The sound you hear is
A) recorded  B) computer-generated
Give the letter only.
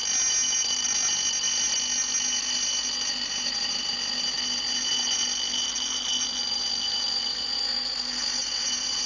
A